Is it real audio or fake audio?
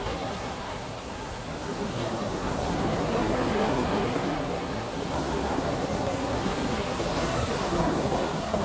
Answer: fake